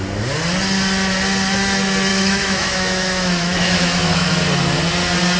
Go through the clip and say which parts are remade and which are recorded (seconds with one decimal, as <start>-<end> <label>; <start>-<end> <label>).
0.0-2.1 recorded; 2.1-4.3 remade; 4.3-5.4 recorded

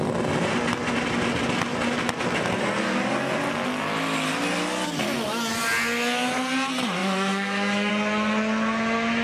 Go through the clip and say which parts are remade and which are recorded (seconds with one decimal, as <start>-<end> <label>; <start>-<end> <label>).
0.0-7.0 recorded; 7.0-7.9 remade; 7.9-9.2 recorded

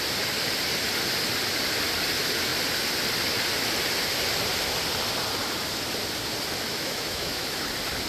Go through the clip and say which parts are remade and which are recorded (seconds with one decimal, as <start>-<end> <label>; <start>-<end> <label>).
0.0-6.7 recorded; 6.7-7.6 remade; 7.6-8.1 recorded

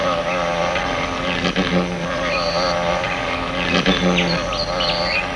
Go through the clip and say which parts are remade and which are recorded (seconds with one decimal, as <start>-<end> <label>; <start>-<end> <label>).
0.0-5.4 recorded